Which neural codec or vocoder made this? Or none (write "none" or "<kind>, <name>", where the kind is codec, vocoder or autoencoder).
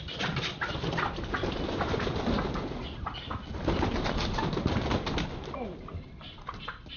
none